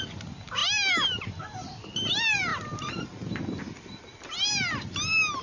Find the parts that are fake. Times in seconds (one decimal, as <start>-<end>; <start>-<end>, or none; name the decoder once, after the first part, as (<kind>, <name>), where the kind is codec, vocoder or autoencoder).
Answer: none